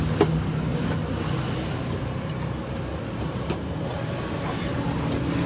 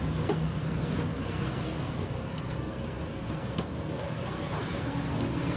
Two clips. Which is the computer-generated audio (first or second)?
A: second